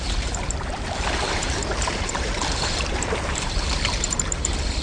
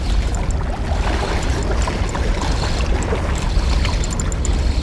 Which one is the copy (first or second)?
first